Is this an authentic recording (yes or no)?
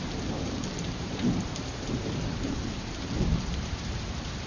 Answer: no